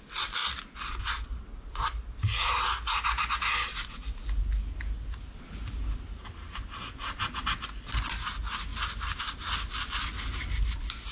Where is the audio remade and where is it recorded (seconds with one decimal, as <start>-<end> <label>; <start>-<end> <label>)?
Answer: 0.0-11.1 recorded